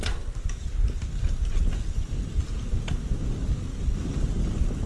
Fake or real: real